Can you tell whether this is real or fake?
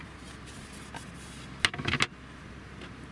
real